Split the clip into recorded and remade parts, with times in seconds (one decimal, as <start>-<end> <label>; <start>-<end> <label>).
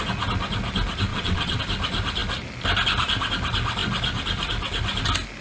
0.0-1.1 recorded; 1.1-1.6 remade; 1.6-5.4 recorded